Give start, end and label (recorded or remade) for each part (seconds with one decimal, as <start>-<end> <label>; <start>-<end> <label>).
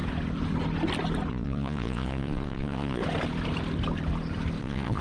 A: 0.0-1.3 recorded; 1.3-3.0 remade; 3.0-4.6 recorded; 4.6-5.0 remade